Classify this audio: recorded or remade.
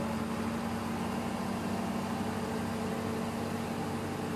recorded